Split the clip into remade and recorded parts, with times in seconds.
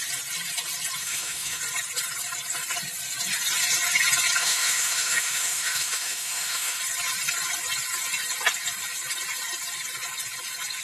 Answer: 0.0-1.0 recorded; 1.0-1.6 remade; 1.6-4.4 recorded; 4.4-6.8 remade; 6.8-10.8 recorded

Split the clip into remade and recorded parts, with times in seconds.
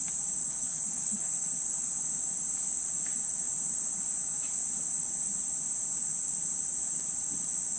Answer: 0.0-0.4 recorded; 0.4-1.5 remade; 1.5-7.8 recorded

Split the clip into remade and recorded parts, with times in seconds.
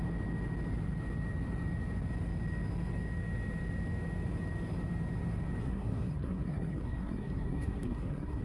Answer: 0.0-5.6 recorded; 5.6-8.4 remade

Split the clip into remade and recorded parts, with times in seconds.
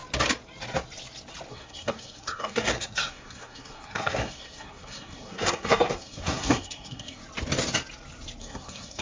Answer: 0.0-1.5 recorded; 1.5-7.2 remade; 7.2-8.4 recorded; 8.4-9.0 remade